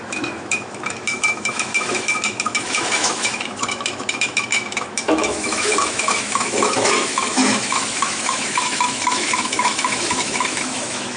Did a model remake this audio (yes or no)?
yes